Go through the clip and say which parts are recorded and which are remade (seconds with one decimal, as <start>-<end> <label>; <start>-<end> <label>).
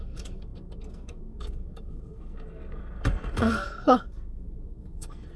0.0-5.4 remade